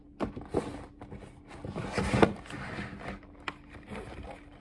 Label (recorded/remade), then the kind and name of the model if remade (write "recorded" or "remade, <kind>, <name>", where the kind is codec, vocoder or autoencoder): recorded